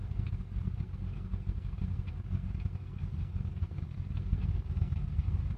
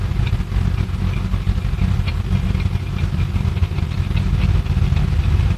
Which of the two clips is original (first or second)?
second